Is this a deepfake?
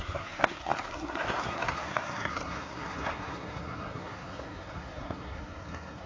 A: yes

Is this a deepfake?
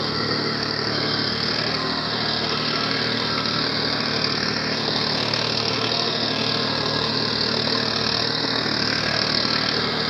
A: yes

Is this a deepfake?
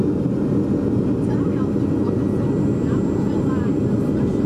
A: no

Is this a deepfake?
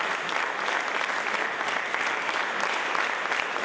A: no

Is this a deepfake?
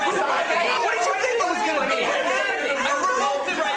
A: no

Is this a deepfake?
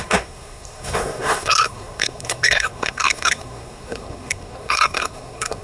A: yes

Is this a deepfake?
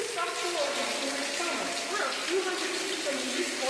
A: no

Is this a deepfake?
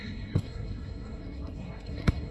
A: yes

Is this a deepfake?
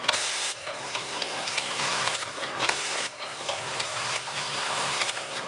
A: yes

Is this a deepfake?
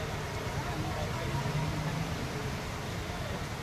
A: no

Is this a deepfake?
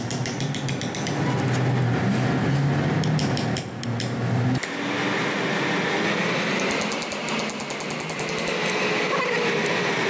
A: no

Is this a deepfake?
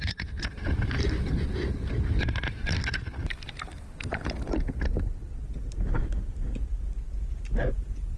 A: no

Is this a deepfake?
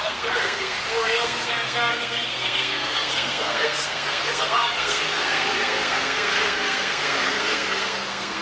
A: yes